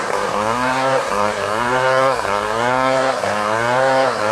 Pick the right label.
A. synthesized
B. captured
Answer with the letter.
A